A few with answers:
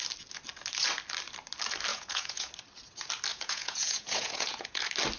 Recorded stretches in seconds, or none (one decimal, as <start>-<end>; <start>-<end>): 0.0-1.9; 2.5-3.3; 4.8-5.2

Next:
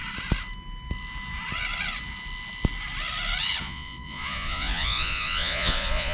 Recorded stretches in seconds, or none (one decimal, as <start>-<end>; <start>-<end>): 0.0-3.6

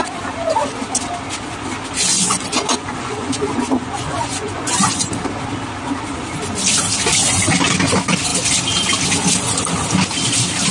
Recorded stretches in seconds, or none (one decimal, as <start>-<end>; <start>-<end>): 0.0-2.1; 5.1-10.7

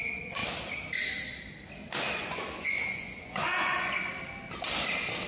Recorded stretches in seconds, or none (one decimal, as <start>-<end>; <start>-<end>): 0.4-2.1; 4.0-5.3